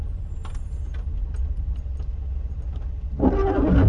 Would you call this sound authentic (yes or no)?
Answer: yes